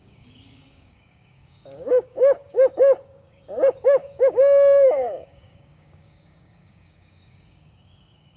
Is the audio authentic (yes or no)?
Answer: no